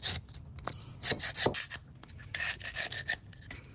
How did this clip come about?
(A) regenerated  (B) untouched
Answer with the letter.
B